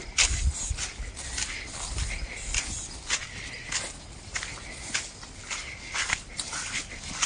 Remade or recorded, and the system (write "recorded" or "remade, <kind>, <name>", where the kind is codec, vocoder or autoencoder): recorded